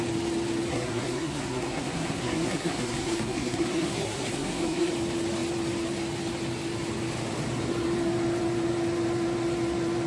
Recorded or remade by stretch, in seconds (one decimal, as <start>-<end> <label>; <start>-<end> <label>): 0.0-0.7 recorded; 0.7-4.9 remade; 4.9-10.1 recorded